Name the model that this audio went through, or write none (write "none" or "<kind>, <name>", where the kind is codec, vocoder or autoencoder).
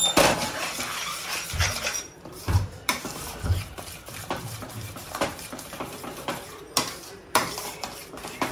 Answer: vocoder, BigVGAN v2